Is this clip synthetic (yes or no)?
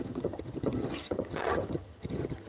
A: yes